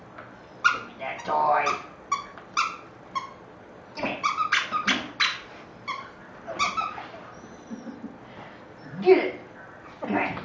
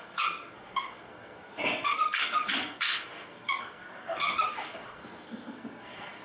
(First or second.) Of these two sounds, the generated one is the second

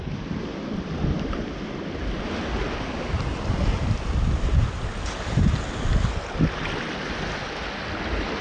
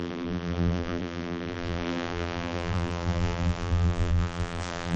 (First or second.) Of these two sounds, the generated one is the second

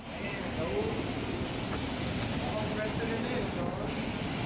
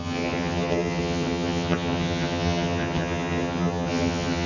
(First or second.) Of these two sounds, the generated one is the second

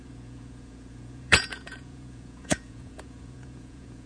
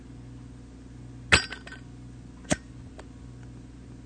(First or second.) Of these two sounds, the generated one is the first